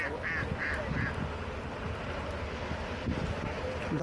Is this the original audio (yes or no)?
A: yes